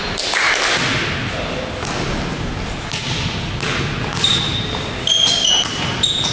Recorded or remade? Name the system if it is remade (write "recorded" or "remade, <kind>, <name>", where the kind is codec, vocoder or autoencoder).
recorded